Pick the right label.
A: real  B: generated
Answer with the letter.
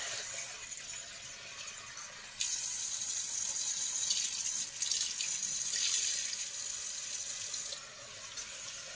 A